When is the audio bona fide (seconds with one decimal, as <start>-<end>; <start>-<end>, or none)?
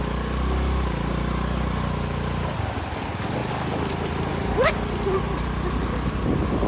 0.0-6.7